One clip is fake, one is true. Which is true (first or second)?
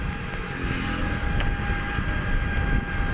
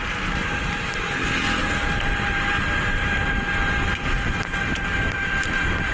first